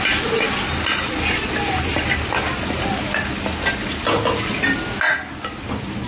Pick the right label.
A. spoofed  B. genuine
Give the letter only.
B